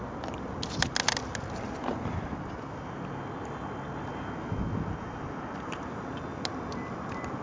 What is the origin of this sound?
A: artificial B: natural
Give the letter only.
B